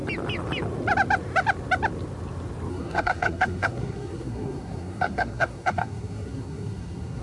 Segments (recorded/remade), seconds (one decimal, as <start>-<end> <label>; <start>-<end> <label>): 0.0-2.7 recorded; 2.7-7.2 remade